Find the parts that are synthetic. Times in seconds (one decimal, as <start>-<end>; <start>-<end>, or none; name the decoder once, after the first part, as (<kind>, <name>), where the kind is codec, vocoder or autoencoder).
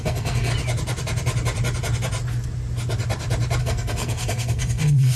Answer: 0.0-0.5 (codec, SNAC); 3.6-5.2